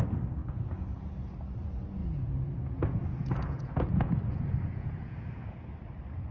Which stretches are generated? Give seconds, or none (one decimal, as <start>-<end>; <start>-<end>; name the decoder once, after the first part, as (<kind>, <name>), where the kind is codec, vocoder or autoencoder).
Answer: 0.4-1.0 (vocoder, Vocos); 2.0-5.5